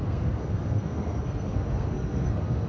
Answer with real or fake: fake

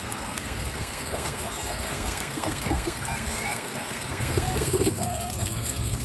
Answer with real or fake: fake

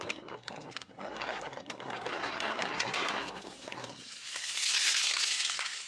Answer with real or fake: fake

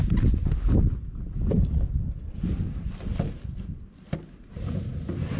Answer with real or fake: real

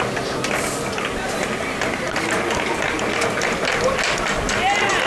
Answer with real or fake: real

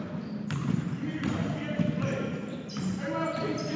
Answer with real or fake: real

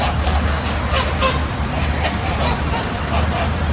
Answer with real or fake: real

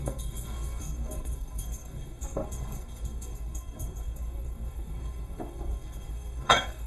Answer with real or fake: fake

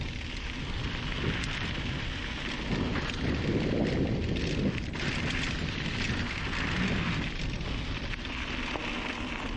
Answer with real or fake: real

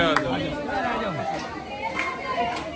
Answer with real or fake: real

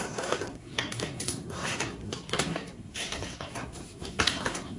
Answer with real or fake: fake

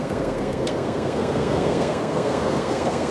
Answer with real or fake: fake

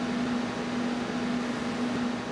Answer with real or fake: real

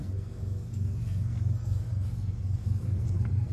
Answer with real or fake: fake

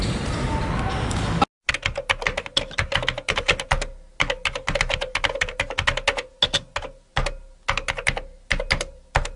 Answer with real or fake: real